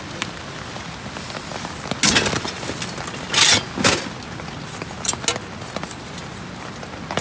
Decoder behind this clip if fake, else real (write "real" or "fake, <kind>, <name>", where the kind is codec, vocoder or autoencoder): real